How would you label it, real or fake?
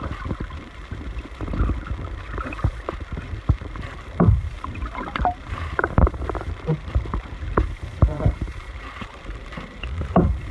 fake